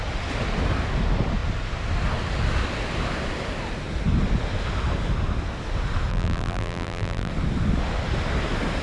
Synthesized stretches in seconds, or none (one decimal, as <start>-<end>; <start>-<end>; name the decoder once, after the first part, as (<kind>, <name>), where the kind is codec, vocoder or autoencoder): 6.1-7.3 (vocoder, BigVGAN v2)